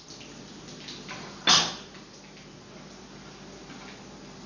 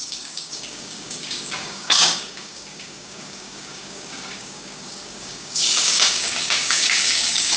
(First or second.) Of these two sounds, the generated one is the second